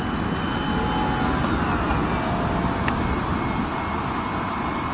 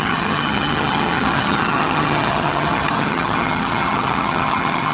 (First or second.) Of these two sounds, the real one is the first